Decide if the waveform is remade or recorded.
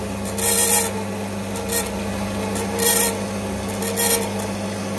recorded